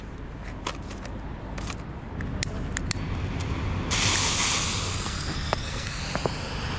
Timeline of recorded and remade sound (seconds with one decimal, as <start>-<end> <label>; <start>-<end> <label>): 0.0-4.9 recorded; 4.9-6.0 remade; 6.0-6.8 recorded